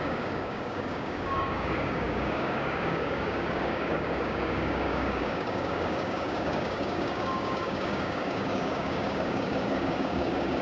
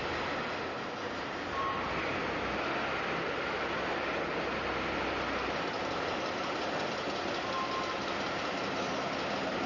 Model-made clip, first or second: first